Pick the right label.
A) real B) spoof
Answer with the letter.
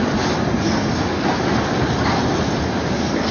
A